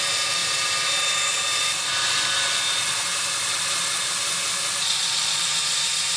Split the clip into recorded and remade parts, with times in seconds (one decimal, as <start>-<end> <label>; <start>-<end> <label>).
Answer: 0.0-4.8 recorded; 4.8-5.4 remade; 5.4-6.2 recorded